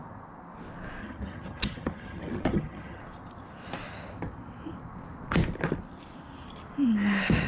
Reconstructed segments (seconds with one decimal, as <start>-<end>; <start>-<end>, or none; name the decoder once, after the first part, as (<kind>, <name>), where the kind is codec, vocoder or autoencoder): 1.0-3.0 (vocoder, HiFi-GAN)